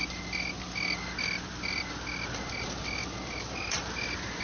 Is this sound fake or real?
real